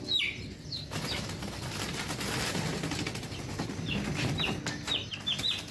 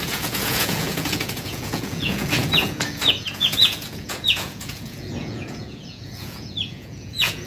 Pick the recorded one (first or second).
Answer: first